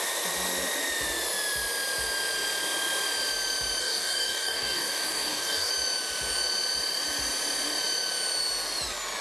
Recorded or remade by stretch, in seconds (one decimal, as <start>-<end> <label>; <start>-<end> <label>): 0.0-3.8 recorded; 3.8-5.7 remade; 5.7-9.2 recorded